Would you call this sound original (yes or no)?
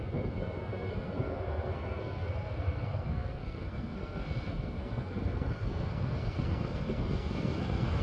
no